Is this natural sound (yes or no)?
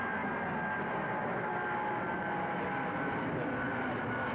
yes